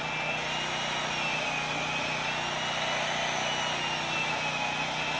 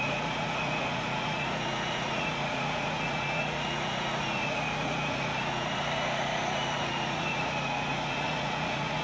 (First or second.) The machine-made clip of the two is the second